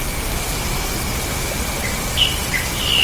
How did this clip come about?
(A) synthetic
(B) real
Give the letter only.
B